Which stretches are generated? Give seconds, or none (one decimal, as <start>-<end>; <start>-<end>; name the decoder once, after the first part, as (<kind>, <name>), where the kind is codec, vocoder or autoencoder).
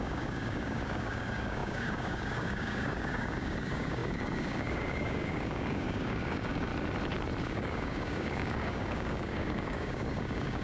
0.0-6.7 (codec, DAC); 7.4-10.6